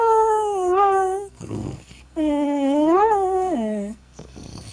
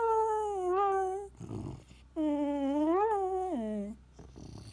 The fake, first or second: first